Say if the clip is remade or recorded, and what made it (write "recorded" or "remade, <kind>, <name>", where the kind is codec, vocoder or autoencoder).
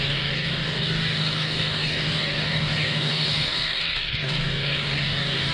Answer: remade, codec, DAC